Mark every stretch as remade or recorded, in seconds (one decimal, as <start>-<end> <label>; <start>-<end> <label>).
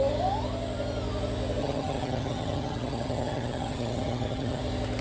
0.0-1.6 recorded; 1.6-4.6 remade; 4.6-5.0 recorded